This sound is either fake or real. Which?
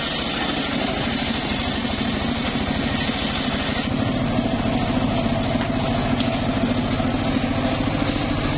real